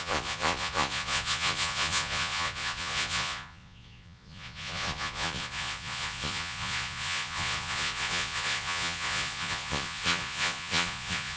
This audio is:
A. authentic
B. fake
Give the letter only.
B